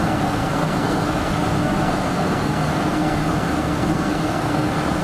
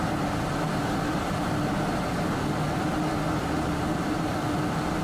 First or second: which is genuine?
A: second